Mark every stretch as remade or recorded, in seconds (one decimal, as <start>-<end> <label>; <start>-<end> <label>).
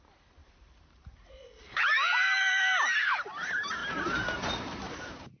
0.0-0.4 recorded; 0.4-2.6 remade; 2.6-5.4 recorded